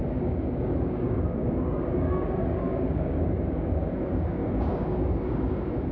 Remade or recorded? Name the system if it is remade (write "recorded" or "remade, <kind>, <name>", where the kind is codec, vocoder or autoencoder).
remade, codec, DAC